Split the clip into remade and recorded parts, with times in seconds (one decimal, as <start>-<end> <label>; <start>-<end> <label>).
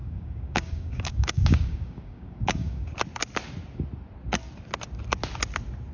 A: 0.0-2.9 remade; 2.9-5.9 recorded